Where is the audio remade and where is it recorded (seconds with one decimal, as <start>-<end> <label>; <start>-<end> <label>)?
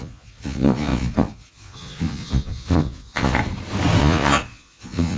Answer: 0.0-3.4 remade; 3.4-4.0 recorded; 4.0-5.2 remade